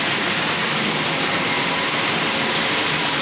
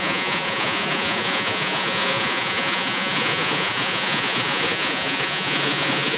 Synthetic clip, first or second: second